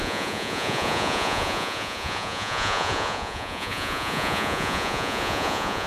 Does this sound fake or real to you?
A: fake